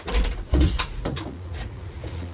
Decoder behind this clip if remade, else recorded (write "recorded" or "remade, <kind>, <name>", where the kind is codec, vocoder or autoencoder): remade, vocoder, Vocos